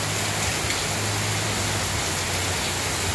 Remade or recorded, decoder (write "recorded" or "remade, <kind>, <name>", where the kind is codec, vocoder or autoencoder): recorded